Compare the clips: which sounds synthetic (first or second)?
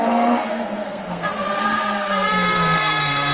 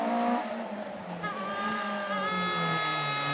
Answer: first